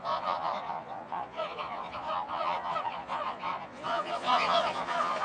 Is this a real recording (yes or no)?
no